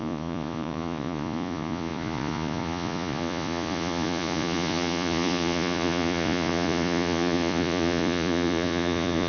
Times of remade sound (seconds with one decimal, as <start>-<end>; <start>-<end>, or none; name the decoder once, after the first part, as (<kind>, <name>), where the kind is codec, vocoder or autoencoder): 0.0-9.3 (vocoder, Vocos)